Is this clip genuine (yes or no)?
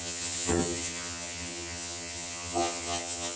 no